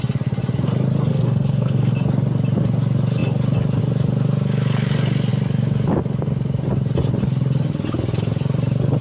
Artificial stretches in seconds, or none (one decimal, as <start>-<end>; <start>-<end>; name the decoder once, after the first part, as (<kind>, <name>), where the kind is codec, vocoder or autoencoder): 1.1-1.9 (codec, SNAC)